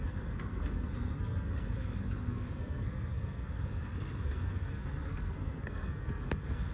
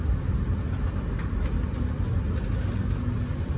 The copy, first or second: first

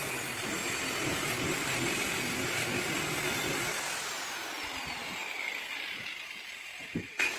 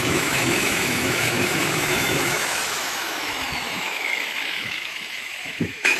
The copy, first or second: second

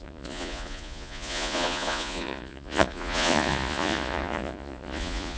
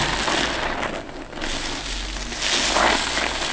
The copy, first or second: first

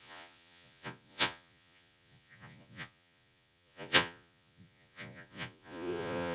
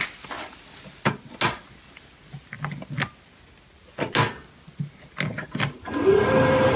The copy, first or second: first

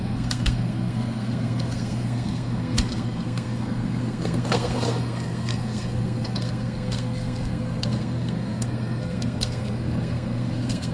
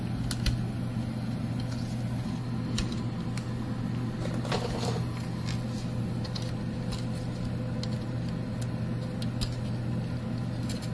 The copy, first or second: first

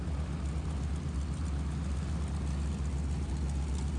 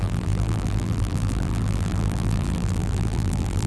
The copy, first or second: second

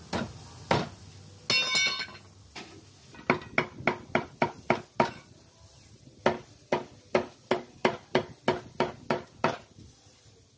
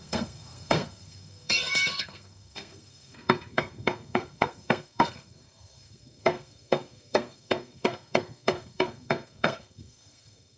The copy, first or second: second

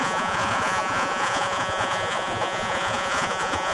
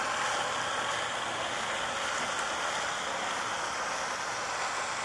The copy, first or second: first